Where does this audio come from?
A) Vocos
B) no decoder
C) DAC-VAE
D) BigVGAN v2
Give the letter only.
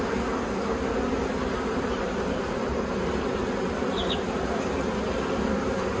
B